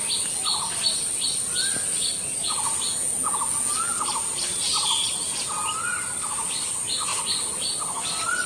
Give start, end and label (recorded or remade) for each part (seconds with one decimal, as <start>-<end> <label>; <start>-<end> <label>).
0.0-8.5 recorded